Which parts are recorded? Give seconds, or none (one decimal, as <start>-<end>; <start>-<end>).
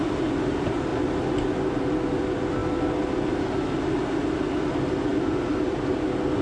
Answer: 0.0-6.4